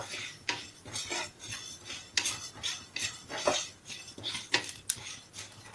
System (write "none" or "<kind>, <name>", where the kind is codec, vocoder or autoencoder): none